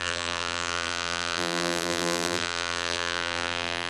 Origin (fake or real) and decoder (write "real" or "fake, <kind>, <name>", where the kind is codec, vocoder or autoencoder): fake, vocoder, BigVGAN v2